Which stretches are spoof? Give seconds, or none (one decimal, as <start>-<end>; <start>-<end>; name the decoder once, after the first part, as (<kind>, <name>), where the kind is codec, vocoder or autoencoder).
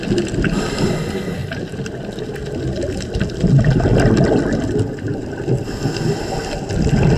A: none